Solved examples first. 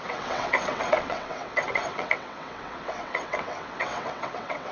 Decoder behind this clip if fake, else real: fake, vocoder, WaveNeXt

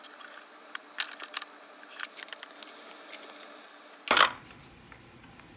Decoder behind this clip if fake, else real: real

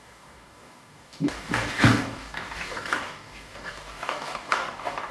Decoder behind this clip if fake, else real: fake, codec, DAC